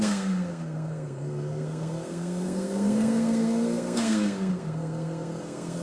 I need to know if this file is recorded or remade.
remade